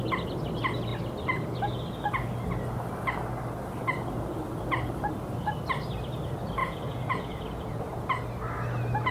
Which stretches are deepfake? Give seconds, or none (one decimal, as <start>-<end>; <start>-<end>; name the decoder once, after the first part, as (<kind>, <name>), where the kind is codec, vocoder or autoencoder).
6.6-7.8 (vocoder, Vocos)